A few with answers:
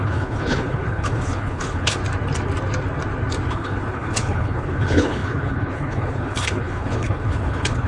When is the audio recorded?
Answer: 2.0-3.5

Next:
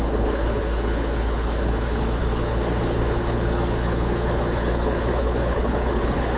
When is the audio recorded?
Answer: none

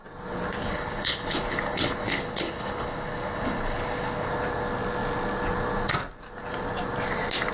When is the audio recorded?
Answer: 0.0-0.6; 4.3-7.5

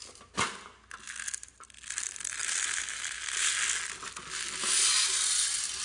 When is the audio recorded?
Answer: 0.0-5.8

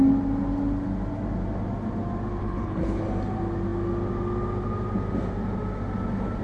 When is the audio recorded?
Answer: 0.0-2.4; 3.0-6.4

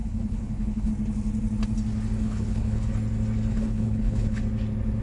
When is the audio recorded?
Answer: 0.9-2.2; 2.9-3.5; 4.4-5.0